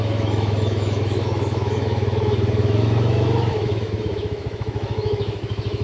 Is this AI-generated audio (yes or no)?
yes